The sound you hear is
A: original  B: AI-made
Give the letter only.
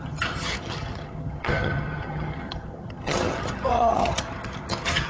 B